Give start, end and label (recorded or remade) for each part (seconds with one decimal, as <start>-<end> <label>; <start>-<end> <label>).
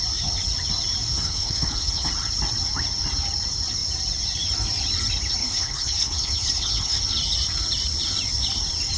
0.0-1.1 recorded; 1.1-2.1 remade; 2.1-5.4 recorded; 5.4-7.0 remade; 7.0-9.0 recorded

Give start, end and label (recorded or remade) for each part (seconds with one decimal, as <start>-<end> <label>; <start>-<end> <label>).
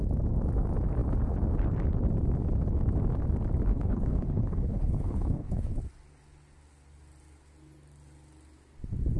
0.0-3.7 recorded; 3.7-5.8 remade; 5.8-9.2 recorded